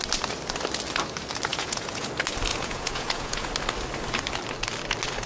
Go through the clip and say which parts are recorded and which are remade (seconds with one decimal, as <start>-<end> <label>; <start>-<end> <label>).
0.0-1.5 recorded; 1.5-2.1 remade; 2.1-2.5 recorded; 2.5-3.5 remade; 3.5-5.3 recorded